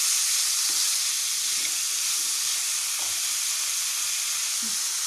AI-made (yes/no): no